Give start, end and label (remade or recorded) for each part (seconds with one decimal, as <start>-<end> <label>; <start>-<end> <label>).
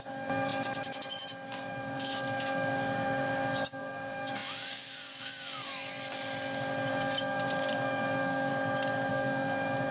0.0-5.7 remade; 5.7-6.9 recorded; 6.9-8.5 remade; 8.5-9.1 recorded; 9.1-9.9 remade